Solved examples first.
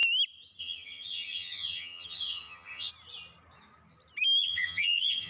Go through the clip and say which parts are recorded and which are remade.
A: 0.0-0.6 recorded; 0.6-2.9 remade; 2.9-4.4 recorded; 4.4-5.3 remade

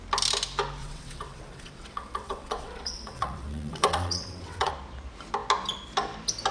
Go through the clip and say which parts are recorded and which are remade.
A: 0.0-0.8 recorded; 0.8-4.7 remade; 4.7-6.5 recorded

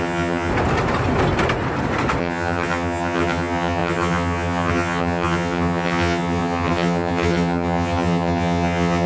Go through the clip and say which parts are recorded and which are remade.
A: 0.0-0.5 remade; 0.5-2.2 recorded; 2.2-9.1 remade

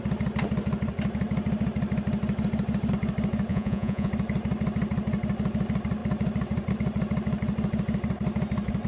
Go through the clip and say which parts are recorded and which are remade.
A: 0.0-3.5 recorded; 3.5-4.1 remade; 4.1-8.9 recorded

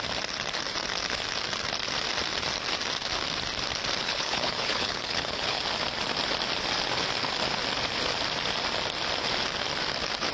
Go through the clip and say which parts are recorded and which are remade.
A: 0.0-4.0 recorded; 4.0-5.6 remade; 5.6-10.3 recorded

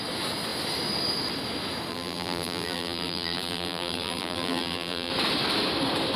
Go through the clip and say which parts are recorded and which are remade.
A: 0.0-1.9 recorded; 1.9-5.1 remade; 5.1-6.2 recorded

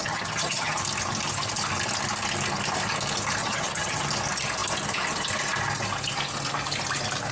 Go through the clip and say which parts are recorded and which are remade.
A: 0.0-0.8 remade; 0.8-3.4 recorded; 3.4-4.0 remade; 4.0-7.3 recorded

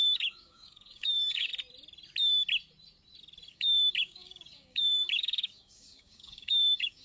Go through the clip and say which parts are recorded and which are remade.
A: 0.0-1.5 remade; 1.5-3.5 recorded; 3.5-7.0 remade